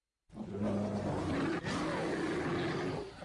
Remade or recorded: recorded